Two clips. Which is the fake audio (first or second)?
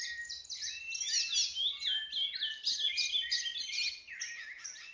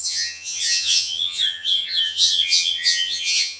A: second